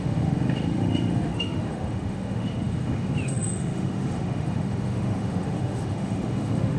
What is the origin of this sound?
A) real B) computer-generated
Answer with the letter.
B